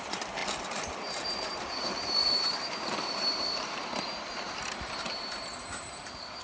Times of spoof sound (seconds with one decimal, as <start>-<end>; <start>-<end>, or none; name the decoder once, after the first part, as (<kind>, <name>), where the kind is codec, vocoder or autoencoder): 0.0-6.4 (vocoder, BigVGAN v2)